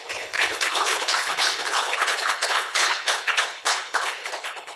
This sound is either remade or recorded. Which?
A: remade